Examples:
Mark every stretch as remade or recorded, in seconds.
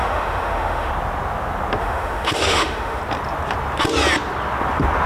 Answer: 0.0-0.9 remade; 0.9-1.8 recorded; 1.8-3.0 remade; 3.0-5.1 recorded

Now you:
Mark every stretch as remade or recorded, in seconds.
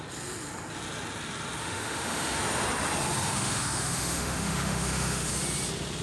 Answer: 0.0-1.6 recorded; 1.6-2.4 remade; 2.4-3.2 recorded; 3.2-5.3 remade; 5.3-6.0 recorded